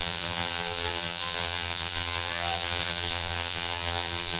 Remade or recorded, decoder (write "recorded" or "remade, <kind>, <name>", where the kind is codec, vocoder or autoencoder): remade, vocoder, BigVGAN v2